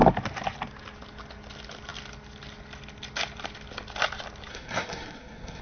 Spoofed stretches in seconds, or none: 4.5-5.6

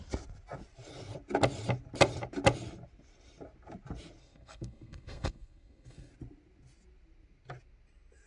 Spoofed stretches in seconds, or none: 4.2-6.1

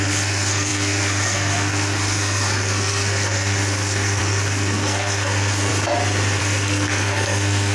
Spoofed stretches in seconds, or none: 0.0-5.7; 6.4-7.7